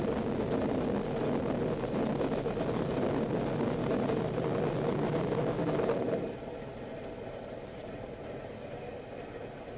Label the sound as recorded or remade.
recorded